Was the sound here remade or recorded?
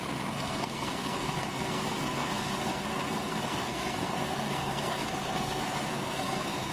remade